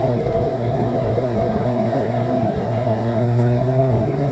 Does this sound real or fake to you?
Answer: fake